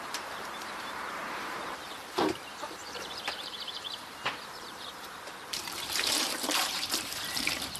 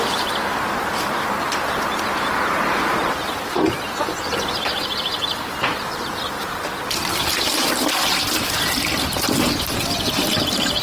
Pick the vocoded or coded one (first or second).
first